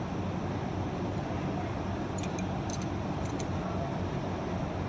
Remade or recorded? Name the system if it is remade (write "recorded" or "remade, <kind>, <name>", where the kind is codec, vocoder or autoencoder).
remade, vocoder, BigVGAN v2